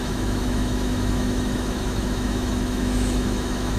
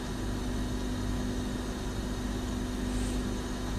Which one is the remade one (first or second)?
first